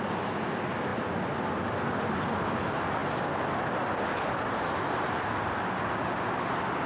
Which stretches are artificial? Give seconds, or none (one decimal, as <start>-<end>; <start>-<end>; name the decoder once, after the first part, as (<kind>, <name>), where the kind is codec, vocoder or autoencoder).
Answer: none